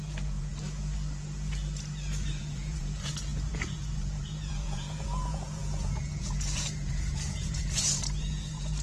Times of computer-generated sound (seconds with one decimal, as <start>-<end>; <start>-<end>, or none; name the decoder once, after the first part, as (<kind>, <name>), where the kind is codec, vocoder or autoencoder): 0.0-0.5 (vocoder, Vocos); 2.3-8.8